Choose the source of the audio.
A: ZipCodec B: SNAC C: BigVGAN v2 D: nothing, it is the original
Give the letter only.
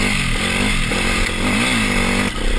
D